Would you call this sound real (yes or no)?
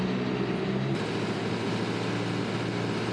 yes